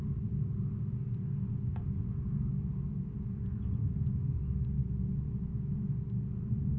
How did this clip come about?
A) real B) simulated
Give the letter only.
A